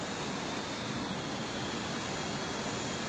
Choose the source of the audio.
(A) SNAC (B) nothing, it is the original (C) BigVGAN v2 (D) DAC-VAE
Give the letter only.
B